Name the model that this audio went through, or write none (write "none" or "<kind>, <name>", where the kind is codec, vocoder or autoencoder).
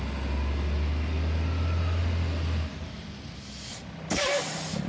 none